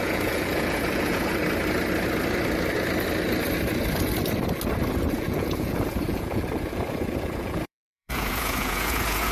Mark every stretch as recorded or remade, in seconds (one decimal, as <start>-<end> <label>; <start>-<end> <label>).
0.0-1.4 remade; 1.4-5.1 recorded; 5.1-9.3 remade